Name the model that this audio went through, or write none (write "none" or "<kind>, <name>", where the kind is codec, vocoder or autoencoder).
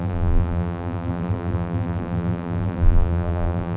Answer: vocoder, BigVGAN v2